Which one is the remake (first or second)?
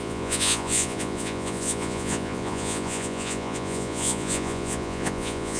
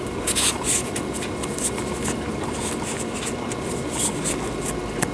first